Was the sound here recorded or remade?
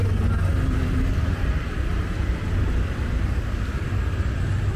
recorded